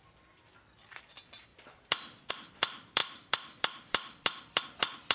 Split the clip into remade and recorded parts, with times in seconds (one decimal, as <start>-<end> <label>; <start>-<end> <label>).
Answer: 0.0-5.1 remade